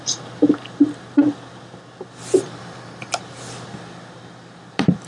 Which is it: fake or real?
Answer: real